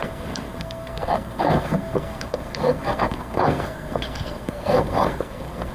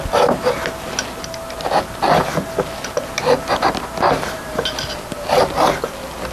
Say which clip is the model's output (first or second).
first